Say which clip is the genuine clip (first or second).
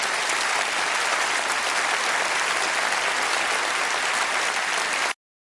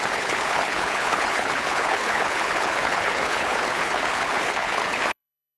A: first